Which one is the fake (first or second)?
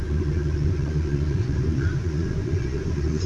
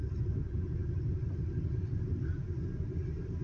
first